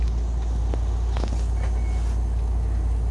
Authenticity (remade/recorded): recorded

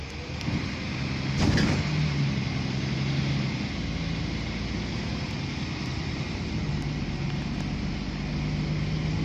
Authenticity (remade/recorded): recorded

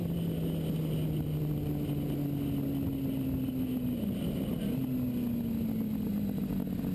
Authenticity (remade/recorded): recorded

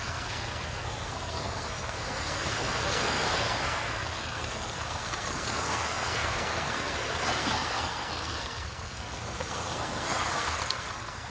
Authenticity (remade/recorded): remade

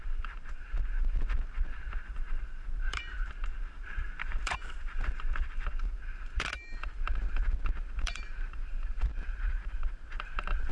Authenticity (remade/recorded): remade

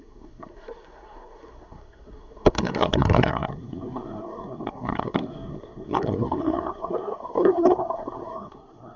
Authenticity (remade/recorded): remade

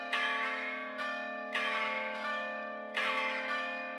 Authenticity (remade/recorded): remade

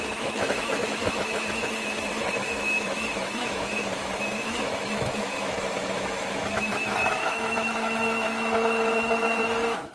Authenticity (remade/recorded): remade